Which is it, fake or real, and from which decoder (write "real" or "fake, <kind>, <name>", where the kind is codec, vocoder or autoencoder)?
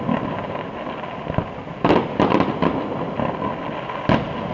real